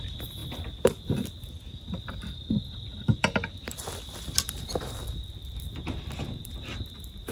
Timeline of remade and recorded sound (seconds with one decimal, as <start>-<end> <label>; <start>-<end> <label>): 0.0-2.9 recorded; 2.9-6.0 remade; 6.0-7.3 recorded